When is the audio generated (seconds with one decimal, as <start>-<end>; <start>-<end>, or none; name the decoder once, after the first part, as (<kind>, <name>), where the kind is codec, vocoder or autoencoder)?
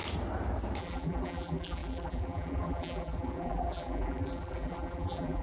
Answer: 0.8-5.4 (vocoder, BigVGAN v2)